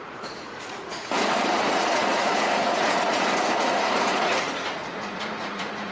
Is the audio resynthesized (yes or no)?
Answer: yes